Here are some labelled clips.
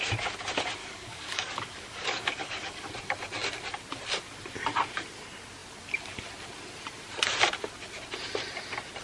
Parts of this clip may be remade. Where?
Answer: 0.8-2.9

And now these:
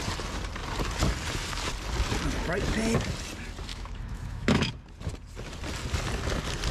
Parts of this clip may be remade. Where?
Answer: 3.7-4.7

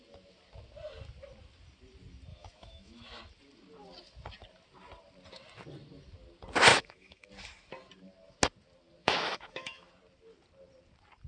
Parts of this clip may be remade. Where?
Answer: 2.3-3.2; 6.7-7.3; 9.0-9.9

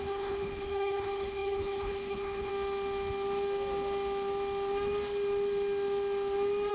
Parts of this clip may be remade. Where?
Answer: 0.0-2.5

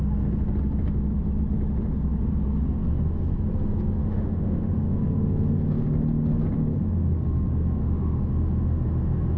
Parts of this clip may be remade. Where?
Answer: 4.0-5.0; 7.8-8.3

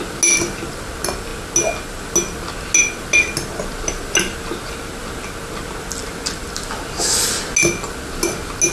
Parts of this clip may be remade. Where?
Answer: none